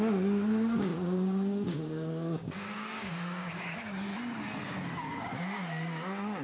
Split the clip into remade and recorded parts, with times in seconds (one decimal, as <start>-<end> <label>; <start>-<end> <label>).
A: 0.0-4.1 remade; 4.1-5.0 recorded; 5.0-6.4 remade